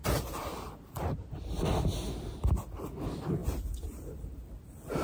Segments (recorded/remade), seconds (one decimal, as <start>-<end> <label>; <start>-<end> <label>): 0.0-1.7 remade; 1.7-3.4 recorded; 3.4-4.4 remade; 4.4-5.0 recorded